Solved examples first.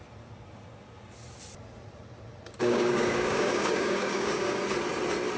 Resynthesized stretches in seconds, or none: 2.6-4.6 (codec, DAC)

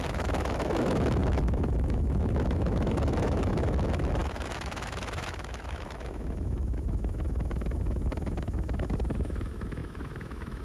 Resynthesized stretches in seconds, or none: 0.0-10.6 (autoencoder, DAC-VAE)

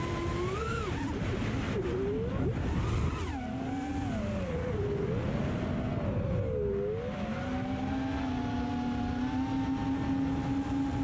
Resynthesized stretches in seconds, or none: none

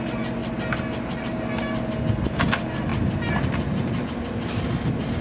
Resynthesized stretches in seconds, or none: none

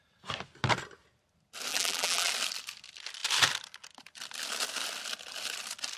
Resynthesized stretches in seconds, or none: 1.7-2.3 (vocoder, BigVGAN v2)

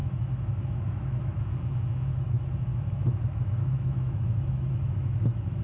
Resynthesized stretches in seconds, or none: 0.0-1.4 (autoencoder, DAC-VAE); 2.1-5.6

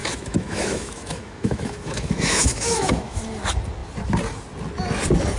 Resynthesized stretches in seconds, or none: 0.0-3.2 (autoencoder, DAC-VAE)

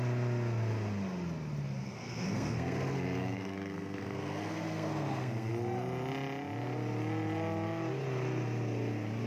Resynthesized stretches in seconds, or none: 1.8-5.5 (codec, SNAC)